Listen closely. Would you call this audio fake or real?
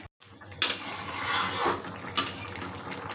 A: real